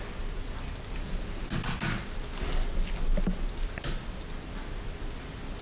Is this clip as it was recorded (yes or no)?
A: yes